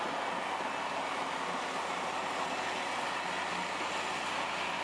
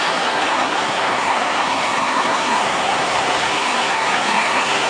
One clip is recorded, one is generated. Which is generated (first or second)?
second